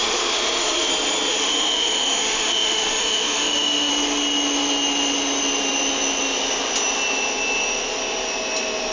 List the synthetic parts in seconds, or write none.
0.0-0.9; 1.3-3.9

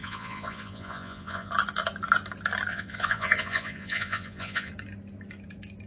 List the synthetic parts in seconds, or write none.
0.0-1.5; 2.7-4.7

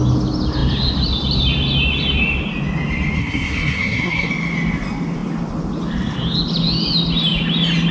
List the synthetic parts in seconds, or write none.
3.2-4.3

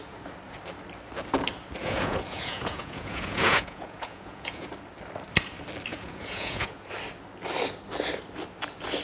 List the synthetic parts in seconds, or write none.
1.8-4.7; 5.9-6.9

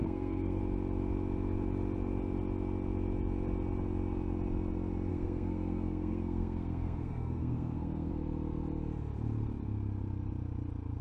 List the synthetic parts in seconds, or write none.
0.0-0.6; 5.1-8.1

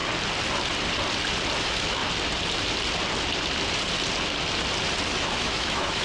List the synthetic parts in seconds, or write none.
1.6-2.0; 5.2-6.0

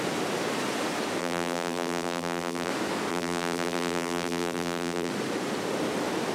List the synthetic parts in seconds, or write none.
1.2-2.7; 3.1-5.1